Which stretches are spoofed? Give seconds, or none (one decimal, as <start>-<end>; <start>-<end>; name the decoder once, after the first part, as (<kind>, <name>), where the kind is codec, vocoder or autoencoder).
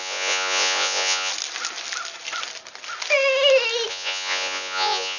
0.0-1.3 (vocoder, Vocos); 3.9-5.2